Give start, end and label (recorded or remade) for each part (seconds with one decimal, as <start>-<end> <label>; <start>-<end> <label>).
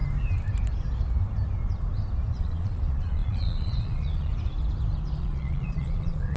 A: 0.0-2.4 recorded; 2.4-4.3 remade; 4.3-5.2 recorded; 5.2-6.4 remade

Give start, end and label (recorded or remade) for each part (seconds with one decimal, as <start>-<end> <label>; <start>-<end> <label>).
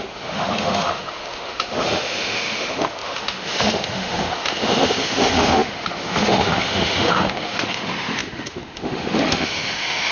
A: 0.0-10.1 remade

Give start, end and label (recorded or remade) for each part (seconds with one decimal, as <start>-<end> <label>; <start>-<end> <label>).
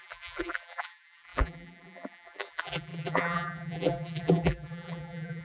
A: 0.0-5.4 remade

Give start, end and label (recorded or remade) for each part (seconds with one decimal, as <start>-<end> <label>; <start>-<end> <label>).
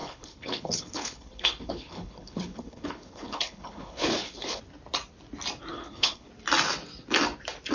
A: 0.0-4.6 remade; 4.6-5.7 recorded; 5.7-6.3 remade; 6.3-7.7 recorded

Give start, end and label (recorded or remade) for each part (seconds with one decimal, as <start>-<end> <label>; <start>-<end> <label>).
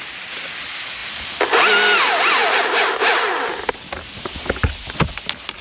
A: 0.0-5.6 recorded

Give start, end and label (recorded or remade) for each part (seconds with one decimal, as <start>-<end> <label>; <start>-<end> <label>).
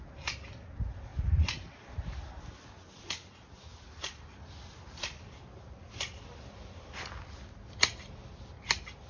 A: 0.0-9.1 recorded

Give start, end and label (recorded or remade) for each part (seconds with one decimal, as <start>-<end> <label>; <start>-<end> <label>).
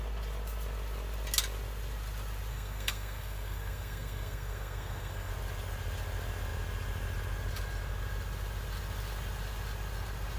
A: 0.0-2.5 recorded; 2.5-5.3 remade; 5.3-10.4 recorded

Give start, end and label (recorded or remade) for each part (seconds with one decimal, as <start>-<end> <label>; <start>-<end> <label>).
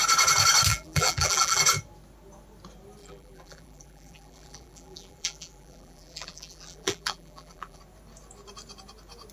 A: 0.0-0.7 recorded; 0.7-1.6 remade; 1.6-3.0 recorded; 3.0-7.8 remade; 7.8-9.3 recorded